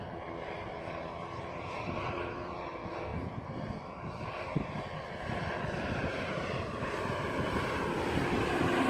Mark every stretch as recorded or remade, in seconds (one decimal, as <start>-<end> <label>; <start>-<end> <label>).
0.0-8.9 recorded